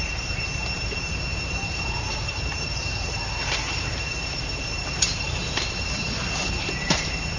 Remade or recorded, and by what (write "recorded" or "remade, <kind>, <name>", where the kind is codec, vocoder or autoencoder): remade, vocoder, BigVGAN v2